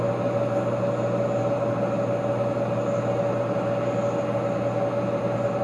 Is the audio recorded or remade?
recorded